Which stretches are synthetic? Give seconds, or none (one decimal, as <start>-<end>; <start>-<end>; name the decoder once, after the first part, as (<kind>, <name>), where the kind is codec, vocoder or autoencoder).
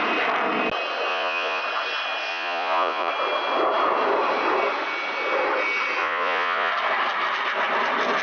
1.1-1.6 (vocoder, Vocos); 2.3-3.1; 6.0-6.7